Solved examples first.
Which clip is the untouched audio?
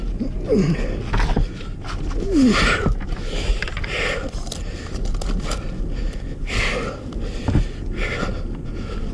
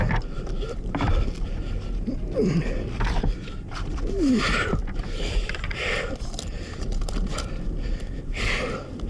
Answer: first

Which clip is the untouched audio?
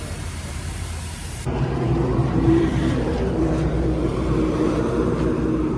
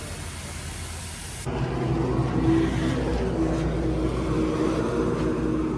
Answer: second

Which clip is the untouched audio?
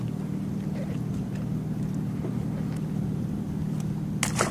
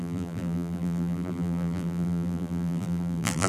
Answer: first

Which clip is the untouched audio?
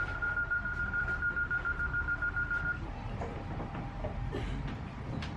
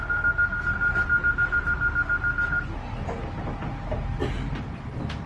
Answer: second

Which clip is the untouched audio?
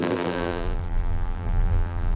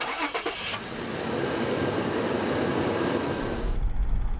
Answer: second